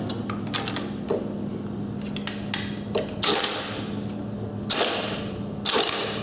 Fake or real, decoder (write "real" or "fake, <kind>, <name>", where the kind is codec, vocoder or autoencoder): real